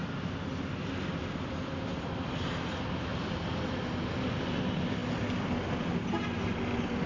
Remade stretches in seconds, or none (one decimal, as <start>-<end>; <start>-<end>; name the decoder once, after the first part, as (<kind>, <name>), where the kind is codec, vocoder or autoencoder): none